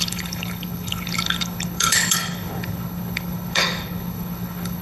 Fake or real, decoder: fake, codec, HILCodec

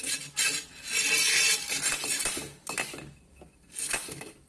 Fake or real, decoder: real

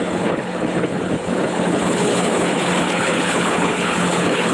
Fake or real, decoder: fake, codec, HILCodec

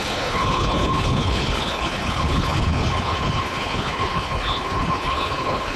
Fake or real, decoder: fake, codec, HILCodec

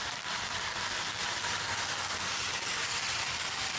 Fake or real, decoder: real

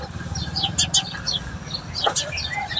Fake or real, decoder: real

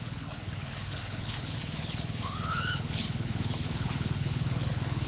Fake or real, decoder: fake, codec, HILCodec